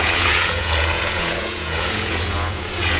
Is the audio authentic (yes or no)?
no